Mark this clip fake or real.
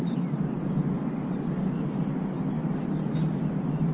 real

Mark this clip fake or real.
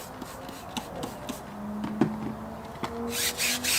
real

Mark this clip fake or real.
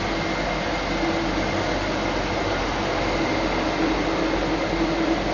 real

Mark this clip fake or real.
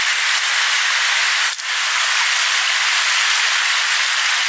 real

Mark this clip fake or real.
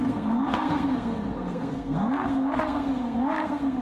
fake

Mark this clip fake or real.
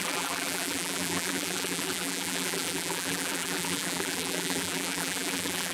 fake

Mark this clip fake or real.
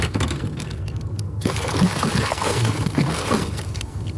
fake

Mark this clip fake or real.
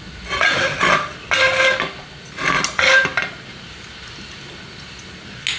real